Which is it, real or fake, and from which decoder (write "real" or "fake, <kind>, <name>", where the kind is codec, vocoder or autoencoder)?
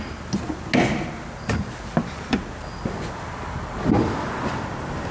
real